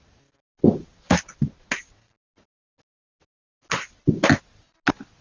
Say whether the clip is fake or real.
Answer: real